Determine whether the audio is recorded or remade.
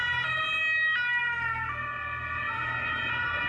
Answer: recorded